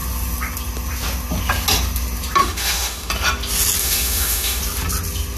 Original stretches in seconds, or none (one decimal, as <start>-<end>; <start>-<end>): 0.0-2.4; 3.1-3.8; 4.6-5.4